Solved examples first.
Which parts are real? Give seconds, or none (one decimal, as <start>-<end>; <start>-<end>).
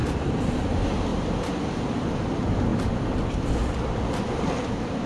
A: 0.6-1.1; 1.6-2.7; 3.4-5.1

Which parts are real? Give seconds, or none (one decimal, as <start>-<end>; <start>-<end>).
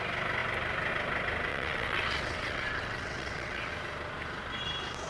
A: 0.0-1.5; 3.7-5.1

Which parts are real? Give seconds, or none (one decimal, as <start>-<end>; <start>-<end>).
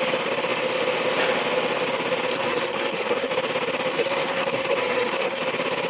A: 0.0-2.3; 3.3-3.9; 5.4-5.9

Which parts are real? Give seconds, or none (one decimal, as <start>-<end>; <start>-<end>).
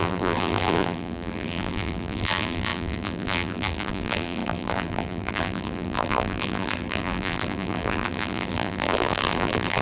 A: none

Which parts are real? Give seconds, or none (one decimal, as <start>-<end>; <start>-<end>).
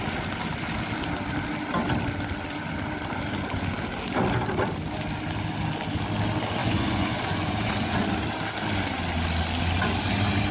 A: 0.0-6.6; 8.1-10.5